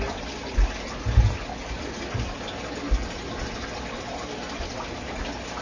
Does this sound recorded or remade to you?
recorded